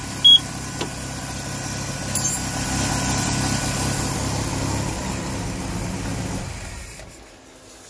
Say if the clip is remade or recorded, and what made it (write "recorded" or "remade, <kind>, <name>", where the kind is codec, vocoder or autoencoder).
recorded